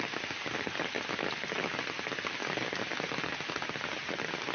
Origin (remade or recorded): recorded